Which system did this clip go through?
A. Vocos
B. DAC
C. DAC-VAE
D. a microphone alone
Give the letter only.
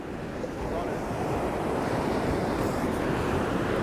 D